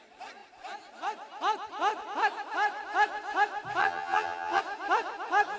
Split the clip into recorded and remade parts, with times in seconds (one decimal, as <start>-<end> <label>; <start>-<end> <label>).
0.0-3.8 recorded; 3.8-4.6 remade; 4.6-5.6 recorded